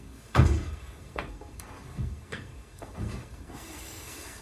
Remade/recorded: remade